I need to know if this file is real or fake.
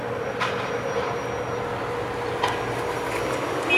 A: real